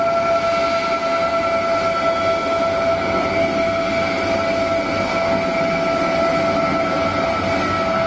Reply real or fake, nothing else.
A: real